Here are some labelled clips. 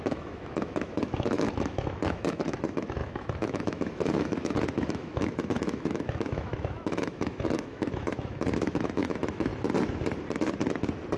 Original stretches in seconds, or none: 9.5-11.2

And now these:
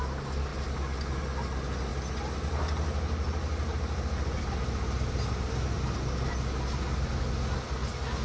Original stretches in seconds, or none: 0.0-8.2

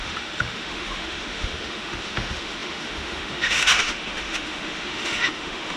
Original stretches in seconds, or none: none

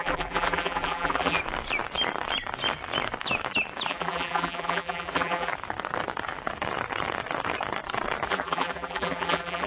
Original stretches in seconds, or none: 1.4-3.9; 5.5-8.3

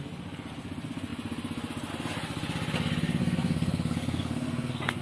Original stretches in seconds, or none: 0.0-3.2

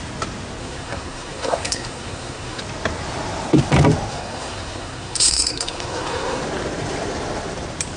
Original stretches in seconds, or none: 0.0-0.6; 2.6-4.1; 6.4-8.0

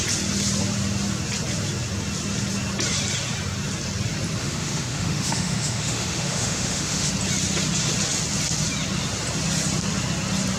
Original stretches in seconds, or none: 0.0-4.4; 7.1-10.6